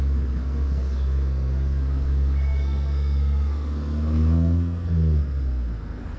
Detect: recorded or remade remade